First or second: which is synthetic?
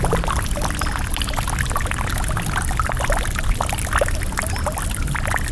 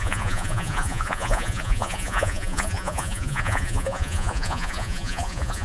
second